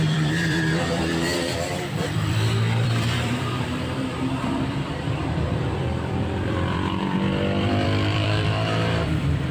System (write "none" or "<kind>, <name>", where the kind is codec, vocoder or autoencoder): vocoder, BigVGAN v2